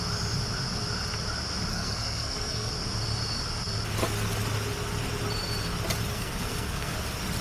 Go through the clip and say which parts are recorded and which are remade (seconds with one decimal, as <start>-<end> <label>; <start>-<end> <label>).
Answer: 0.0-1.7 recorded; 1.7-2.7 remade; 2.7-6.1 recorded; 6.1-7.0 remade; 7.0-7.4 recorded